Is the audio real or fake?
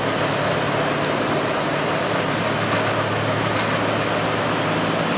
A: real